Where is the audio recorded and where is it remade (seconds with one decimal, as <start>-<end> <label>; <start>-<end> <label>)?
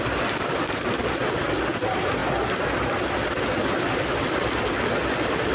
0.0-5.5 recorded